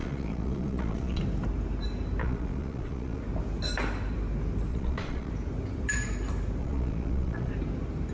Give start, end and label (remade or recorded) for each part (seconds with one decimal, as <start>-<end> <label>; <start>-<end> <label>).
0.0-1.2 remade; 1.2-2.2 recorded; 2.2-3.2 remade; 3.2-4.7 recorded; 4.7-5.3 remade; 5.3-6.6 recorded; 6.6-7.5 remade; 7.5-8.1 recorded